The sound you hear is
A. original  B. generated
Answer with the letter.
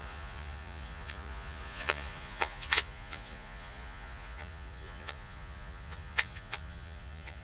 B